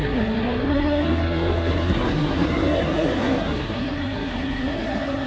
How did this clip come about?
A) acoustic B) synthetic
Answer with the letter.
B